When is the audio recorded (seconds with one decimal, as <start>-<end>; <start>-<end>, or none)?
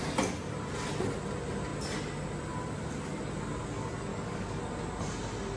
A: 0.0-4.1; 4.6-5.6